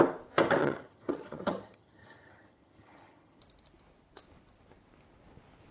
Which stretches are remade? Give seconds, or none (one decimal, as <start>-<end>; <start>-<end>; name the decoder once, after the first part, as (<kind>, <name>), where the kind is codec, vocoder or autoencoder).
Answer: 0.6-3.4 (vocoder, HiFi-GAN)